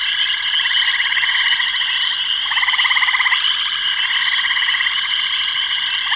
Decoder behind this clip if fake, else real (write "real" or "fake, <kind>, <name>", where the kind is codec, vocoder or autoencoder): real